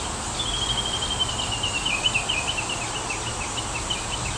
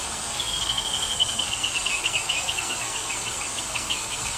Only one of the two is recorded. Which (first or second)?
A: first